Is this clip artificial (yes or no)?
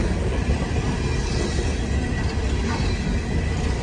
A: no